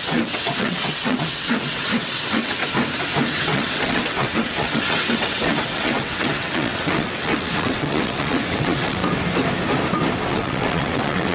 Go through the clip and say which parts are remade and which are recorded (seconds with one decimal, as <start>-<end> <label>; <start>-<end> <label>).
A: 0.0-2.6 remade; 2.6-3.3 recorded; 3.3-9.0 remade; 9.0-10.3 recorded; 10.3-11.3 remade